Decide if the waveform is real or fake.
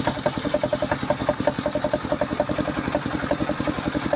real